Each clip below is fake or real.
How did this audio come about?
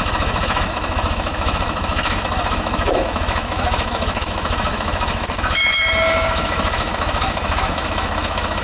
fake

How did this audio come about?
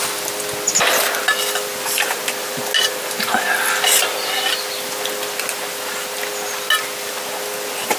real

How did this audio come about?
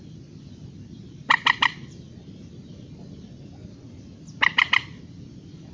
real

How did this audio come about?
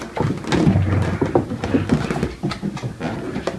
real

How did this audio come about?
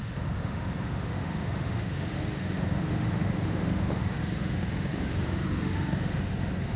fake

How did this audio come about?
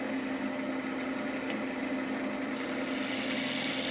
real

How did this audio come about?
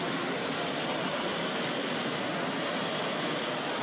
real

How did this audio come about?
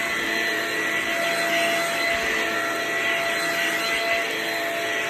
real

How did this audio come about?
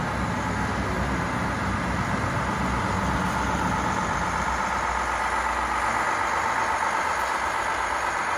real